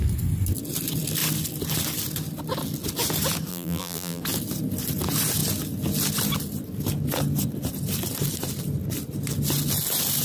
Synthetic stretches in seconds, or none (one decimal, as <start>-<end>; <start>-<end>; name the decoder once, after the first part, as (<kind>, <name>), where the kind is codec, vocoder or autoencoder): 3.5-4.2 (vocoder, BigVGAN v2)